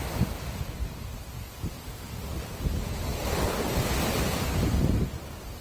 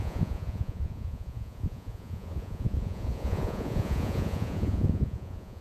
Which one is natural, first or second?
first